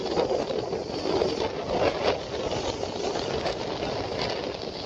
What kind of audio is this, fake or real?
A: real